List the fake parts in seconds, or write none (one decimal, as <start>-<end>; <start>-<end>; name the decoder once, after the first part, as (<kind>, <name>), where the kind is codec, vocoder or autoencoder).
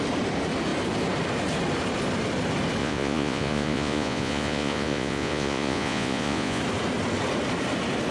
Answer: 2.8-6.6 (vocoder, Vocos)